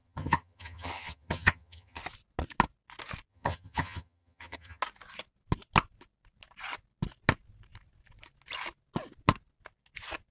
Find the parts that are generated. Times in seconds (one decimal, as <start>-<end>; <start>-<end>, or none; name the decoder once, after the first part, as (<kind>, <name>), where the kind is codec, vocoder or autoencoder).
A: 0.0-2.0 (vocoder, HiFi-GAN); 3.3-4.8